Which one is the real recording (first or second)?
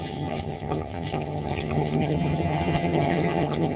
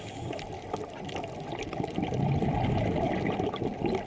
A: second